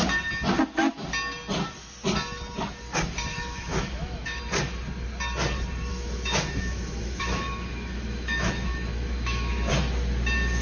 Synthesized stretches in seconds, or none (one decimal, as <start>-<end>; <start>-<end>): 3.3-4.4; 5.9-9.7